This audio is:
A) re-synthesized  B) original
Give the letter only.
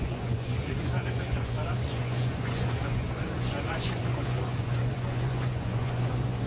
A